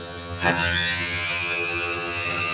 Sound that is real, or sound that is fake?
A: fake